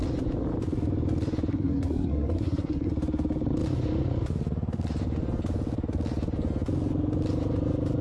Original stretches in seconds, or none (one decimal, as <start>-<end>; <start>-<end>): 0.0-1.5; 2.9-8.0